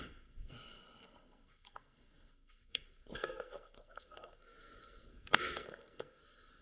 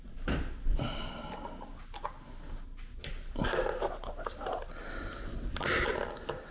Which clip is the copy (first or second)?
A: first